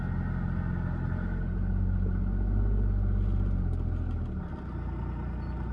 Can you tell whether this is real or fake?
real